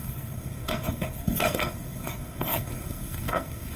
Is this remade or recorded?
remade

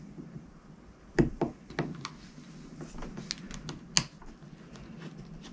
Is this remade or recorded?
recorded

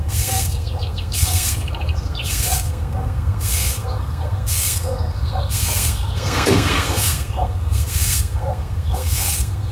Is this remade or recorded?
remade